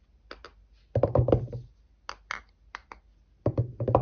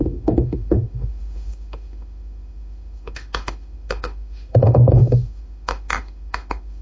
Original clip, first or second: first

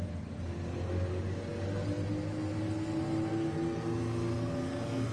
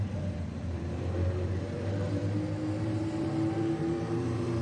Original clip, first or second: first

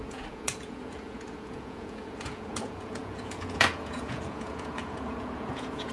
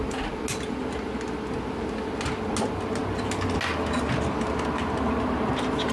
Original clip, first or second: second